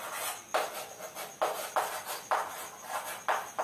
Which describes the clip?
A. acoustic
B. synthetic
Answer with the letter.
A